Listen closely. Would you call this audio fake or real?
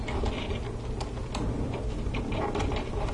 real